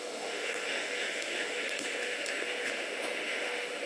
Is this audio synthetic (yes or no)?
yes